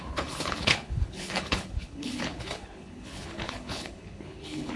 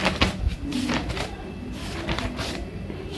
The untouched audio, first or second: second